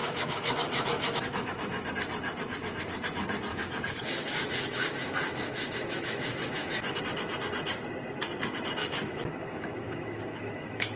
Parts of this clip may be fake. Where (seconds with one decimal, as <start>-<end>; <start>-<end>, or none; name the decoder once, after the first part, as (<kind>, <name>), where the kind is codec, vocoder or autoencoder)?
0.0-1.9 (autoencoder, DAC-VAE); 3.5-7.0; 8.8-11.0

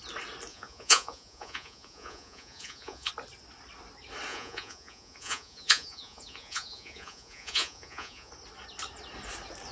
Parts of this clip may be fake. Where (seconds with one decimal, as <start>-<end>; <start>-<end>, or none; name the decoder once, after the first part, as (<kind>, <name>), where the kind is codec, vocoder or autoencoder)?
0.5-3.1 (vocoder, Vocos); 4.3-8.3

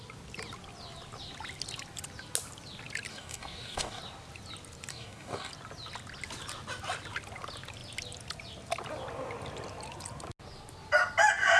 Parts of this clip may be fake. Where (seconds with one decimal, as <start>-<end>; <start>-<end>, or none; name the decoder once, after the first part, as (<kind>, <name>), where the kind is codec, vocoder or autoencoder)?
3.1-4.0 (codec, DAC); 4.9-5.5

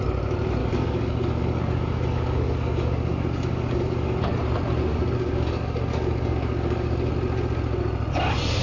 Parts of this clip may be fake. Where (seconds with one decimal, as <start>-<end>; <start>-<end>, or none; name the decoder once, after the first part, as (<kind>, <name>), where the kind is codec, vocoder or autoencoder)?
0.6-4.2 (codec, DAC); 4.9-7.1

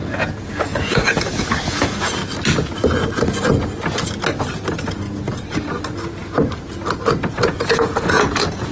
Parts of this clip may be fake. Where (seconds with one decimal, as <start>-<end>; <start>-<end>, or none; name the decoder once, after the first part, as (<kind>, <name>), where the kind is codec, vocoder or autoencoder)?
0.0-2.2 (vocoder, Vocos); 7.3-8.7

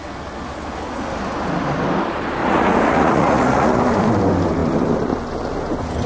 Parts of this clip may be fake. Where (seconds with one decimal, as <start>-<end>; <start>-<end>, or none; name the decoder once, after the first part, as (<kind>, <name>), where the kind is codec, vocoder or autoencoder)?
2.4-3.8 (vocoder, Vocos)

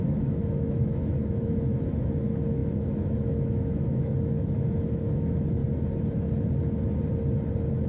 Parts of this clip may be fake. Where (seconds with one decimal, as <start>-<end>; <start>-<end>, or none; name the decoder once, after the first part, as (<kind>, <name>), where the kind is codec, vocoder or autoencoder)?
0.0-5.6 (autoencoder, DAC-VAE)